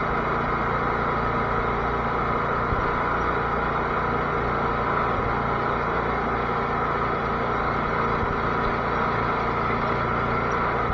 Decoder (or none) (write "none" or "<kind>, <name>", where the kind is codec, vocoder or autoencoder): none